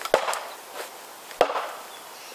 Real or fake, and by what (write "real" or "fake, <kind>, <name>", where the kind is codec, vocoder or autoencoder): real